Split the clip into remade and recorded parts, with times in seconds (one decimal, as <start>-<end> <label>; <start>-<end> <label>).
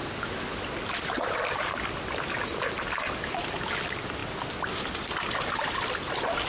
0.0-6.5 recorded